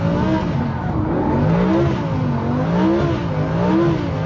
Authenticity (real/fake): real